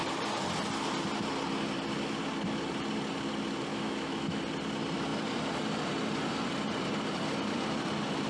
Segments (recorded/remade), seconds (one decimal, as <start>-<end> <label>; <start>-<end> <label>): 0.0-3.7 recorded; 3.7-4.4 remade; 4.4-8.3 recorded